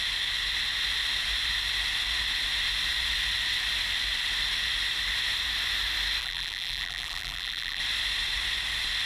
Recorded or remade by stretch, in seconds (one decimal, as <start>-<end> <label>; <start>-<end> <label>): 0.0-6.2 recorded; 6.2-7.8 remade; 7.8-9.1 recorded